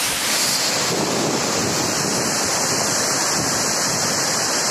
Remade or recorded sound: recorded